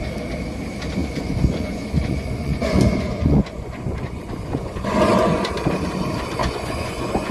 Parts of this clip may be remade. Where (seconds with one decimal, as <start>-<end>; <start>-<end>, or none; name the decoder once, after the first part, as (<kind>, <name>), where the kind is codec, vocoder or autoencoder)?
1.0-5.4 (vocoder, Vocos); 6.4-7.3

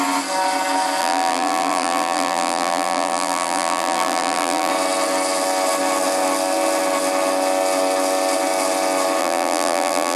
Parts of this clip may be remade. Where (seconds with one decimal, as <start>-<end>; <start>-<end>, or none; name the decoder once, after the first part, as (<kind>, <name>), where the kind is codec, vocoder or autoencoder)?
1.0-4.7 (vocoder, BigVGAN v2); 9.2-10.2

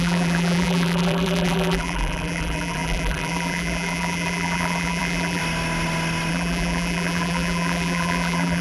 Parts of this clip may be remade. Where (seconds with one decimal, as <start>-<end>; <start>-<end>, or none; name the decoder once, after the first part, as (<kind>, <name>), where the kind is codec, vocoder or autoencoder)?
0.0-5.4 (vocoder, BigVGAN v2); 6.3-8.6

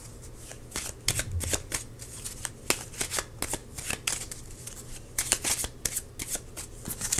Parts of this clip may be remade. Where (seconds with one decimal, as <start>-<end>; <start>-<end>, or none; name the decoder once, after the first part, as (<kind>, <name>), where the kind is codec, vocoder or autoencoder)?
3.6-5.2 (vocoder, BigVGAN v2)

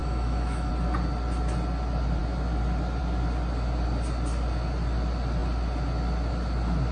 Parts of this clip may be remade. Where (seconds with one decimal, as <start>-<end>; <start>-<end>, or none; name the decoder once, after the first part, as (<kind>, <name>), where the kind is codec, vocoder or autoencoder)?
0.0-0.7 (autoencoder, DAC-VAE)

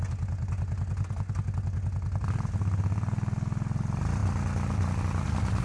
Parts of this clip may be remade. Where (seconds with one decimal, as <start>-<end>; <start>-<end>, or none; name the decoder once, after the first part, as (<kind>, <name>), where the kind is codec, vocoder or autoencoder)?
none